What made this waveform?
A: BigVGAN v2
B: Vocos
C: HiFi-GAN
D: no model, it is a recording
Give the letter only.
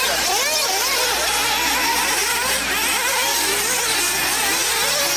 D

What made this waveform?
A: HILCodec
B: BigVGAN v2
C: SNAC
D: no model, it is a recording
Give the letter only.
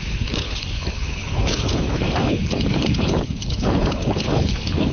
A